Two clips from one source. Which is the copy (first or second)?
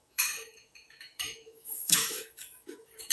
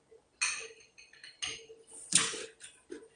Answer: first